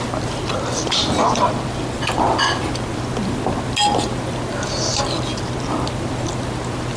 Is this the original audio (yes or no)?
yes